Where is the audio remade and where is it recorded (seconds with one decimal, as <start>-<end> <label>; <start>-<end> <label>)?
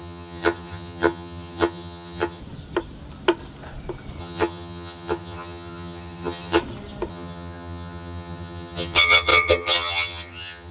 0.0-2.4 remade; 2.4-4.2 recorded; 4.2-6.6 remade; 6.6-7.1 recorded; 7.1-10.7 remade